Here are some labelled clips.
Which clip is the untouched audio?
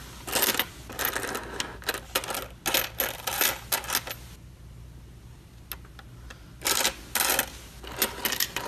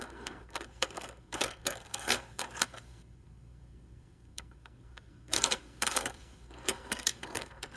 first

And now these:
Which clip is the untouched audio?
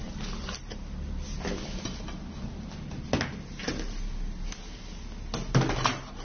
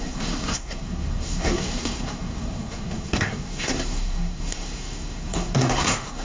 first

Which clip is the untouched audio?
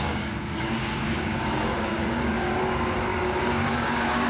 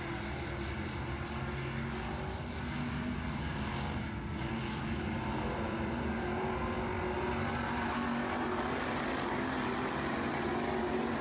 second